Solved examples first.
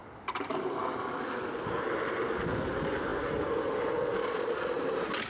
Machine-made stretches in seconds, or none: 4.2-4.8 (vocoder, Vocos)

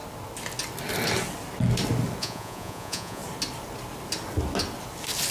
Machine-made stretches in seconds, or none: 2.2-3.2 (vocoder, Vocos)